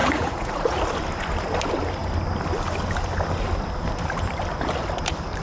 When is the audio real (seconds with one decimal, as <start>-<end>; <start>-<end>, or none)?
0.8-5.4